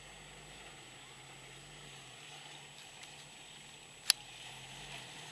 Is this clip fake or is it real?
real